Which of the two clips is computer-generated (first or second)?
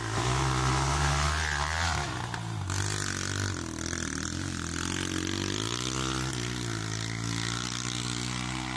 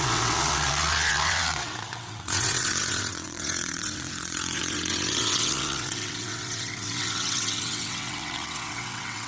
second